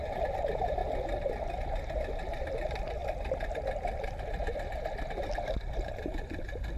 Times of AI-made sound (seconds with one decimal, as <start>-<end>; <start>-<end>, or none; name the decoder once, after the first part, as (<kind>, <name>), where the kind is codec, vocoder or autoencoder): 0.0-0.8 (vocoder, BigVGAN v2); 1.6-3.0; 5.9-6.8